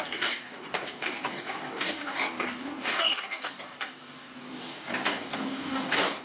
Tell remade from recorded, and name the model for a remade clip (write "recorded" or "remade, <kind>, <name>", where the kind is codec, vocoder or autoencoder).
remade, codec, DAC